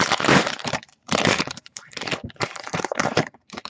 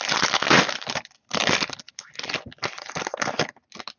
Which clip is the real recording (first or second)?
second